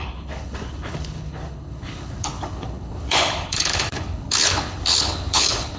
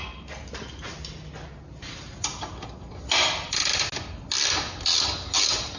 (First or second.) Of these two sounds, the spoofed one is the first